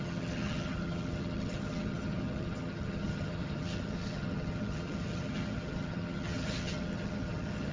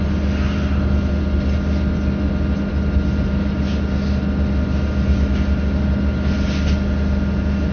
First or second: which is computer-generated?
first